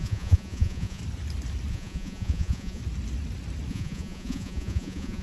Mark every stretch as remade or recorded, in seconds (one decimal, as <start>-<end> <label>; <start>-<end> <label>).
0.0-1.0 remade; 1.0-1.7 recorded; 1.7-2.8 remade; 2.8-3.7 recorded; 3.7-5.2 remade

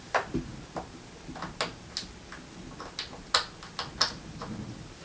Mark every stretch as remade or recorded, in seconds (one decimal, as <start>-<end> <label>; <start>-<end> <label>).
0.0-5.0 recorded

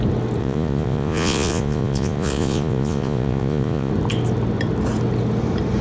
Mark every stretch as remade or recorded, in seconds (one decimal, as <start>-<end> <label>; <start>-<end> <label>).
0.0-0.4 recorded; 0.4-3.9 remade; 3.9-5.8 recorded

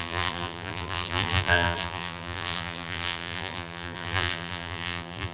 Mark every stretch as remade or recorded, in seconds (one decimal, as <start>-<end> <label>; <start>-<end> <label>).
0.0-5.3 remade

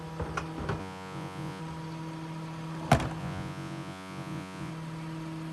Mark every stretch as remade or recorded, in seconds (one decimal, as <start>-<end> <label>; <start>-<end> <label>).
0.0-0.8 recorded; 0.8-1.6 remade; 1.6-3.2 recorded; 3.2-4.7 remade; 4.7-5.5 recorded

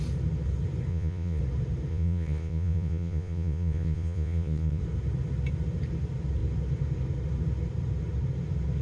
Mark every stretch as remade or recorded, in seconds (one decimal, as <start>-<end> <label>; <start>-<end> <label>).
0.0-0.9 recorded; 0.9-1.4 remade; 1.4-1.9 recorded; 1.9-4.8 remade; 4.8-8.8 recorded

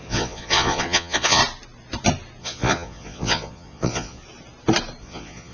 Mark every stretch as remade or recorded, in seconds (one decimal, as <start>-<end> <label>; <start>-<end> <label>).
0.0-1.4 remade; 1.4-2.4 recorded; 2.4-4.2 remade; 4.2-5.0 recorded; 5.0-5.5 remade

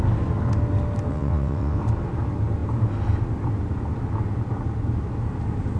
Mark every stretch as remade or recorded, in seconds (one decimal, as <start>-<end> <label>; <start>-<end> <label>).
0.0-1.1 recorded; 1.1-1.8 remade; 1.8-5.8 recorded